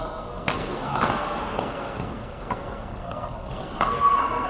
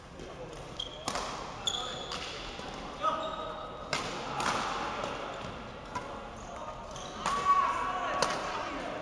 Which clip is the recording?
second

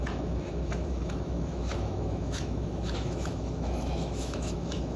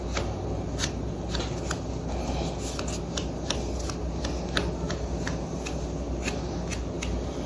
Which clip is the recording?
second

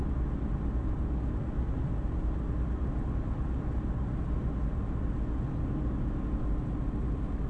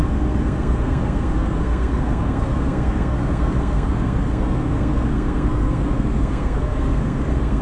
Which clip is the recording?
first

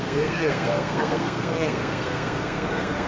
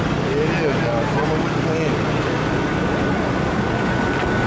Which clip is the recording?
second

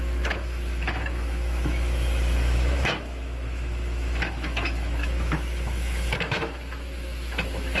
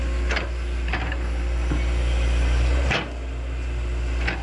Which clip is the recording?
second